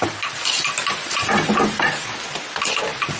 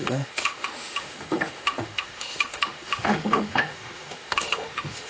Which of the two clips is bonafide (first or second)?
first